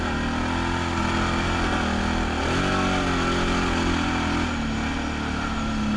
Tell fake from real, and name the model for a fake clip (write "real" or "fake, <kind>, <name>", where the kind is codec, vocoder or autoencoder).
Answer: real